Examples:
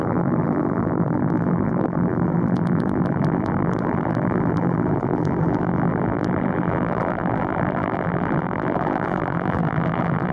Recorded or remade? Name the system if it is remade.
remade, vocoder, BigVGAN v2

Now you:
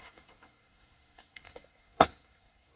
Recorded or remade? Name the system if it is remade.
remade, codec, SNAC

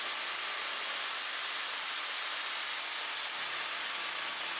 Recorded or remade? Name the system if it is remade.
recorded